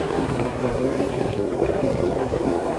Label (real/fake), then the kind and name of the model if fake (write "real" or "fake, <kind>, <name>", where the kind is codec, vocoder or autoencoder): fake, codec, SNAC